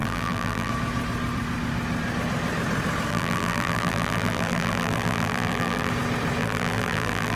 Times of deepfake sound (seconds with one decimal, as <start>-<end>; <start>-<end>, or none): 0.0-0.7; 3.1-5.9; 6.4-7.4